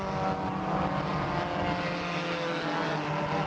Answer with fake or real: real